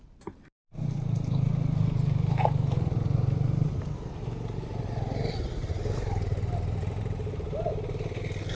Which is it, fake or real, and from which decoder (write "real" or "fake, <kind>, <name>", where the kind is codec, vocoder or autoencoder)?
real